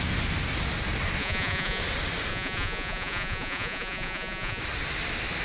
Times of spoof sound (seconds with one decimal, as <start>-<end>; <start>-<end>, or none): 1.2-1.8; 2.3-4.6